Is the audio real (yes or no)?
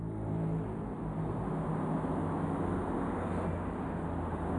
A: yes